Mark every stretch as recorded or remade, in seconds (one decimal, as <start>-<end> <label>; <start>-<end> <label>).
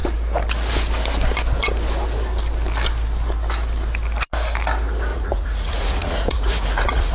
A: 0.0-5.1 recorded; 5.1-7.1 remade